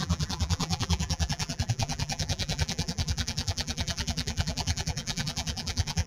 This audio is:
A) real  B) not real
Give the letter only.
B